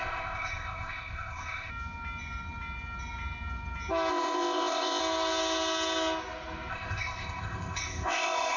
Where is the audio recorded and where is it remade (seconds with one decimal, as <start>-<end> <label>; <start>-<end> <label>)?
0.0-1.7 remade; 1.7-4.1 recorded; 4.1-5.0 remade; 5.0-6.7 recorded; 6.7-8.6 remade